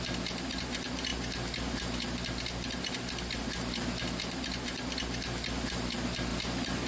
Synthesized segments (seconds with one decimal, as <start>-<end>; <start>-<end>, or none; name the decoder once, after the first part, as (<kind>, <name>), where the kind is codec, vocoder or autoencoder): none